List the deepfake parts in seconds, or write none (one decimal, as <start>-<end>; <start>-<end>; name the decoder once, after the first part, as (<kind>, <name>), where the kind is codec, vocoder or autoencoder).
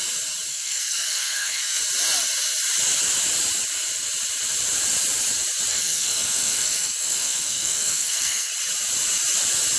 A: 0.5-1.8 (codec, SNAC); 5.7-8.5